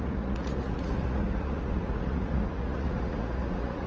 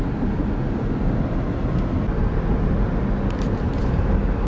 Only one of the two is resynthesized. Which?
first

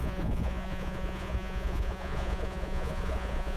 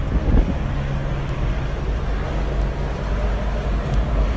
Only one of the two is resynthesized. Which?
first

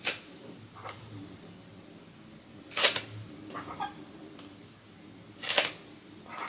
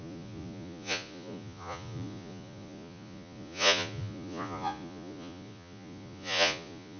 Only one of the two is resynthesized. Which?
second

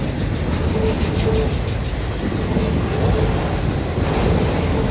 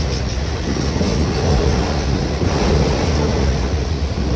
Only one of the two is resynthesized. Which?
second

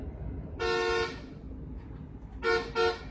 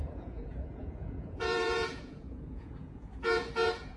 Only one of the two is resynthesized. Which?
second